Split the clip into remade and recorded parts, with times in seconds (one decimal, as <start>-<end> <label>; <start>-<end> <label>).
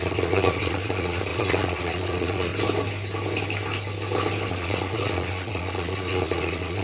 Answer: 0.0-2.5 remade; 2.5-4.5 recorded; 4.5-6.8 remade